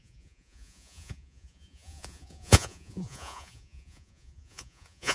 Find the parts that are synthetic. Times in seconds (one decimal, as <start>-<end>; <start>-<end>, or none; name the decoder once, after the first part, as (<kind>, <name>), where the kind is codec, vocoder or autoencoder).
0.0-5.1 (vocoder, Vocos)